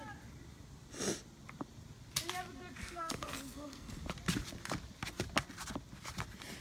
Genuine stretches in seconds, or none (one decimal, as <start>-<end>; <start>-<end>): 0.0-2.8; 4.0-6.6